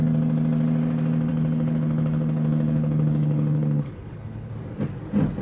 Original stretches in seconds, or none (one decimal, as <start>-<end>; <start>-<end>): 0.0-1.3; 4.5-5.4